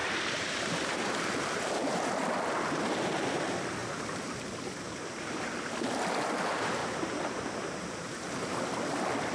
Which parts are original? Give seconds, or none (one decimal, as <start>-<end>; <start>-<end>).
1.6-3.8; 5.7-6.8; 8.6-9.3